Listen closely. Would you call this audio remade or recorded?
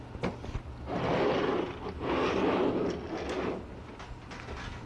recorded